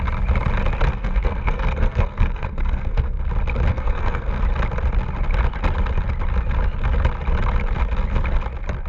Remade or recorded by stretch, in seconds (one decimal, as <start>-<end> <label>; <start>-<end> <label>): 0.0-0.9 recorded; 0.9-3.2 remade; 3.2-3.7 recorded; 3.7-4.4 remade; 4.4-8.9 recorded